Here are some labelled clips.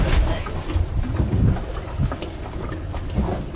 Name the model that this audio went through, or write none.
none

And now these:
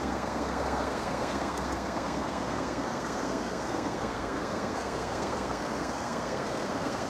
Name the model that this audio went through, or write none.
codec, SNAC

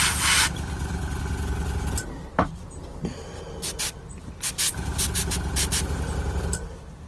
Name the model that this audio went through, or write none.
none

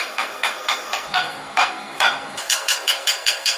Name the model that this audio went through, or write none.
codec, SNAC